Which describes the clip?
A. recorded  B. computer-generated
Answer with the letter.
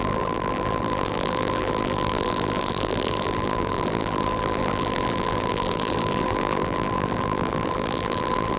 B